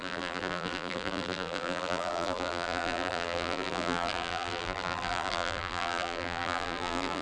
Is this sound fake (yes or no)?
yes